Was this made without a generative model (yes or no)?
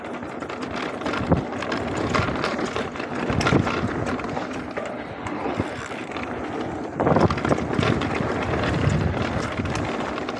yes